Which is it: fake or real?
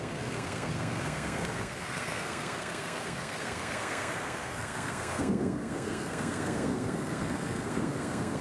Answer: fake